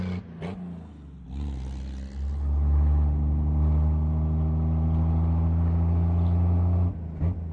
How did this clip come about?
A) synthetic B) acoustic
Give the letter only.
B